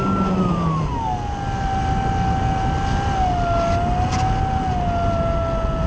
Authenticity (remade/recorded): recorded